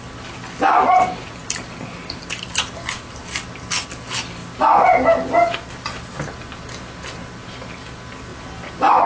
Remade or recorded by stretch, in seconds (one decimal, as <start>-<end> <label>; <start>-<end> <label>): 0.0-1.4 recorded; 1.4-3.7 remade; 3.7-8.3 recorded; 8.3-9.1 remade